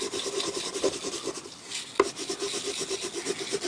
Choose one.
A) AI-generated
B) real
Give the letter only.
B